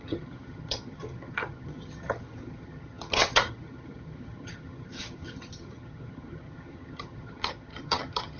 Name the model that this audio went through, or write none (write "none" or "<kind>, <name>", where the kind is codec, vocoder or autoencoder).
vocoder, HiFi-GAN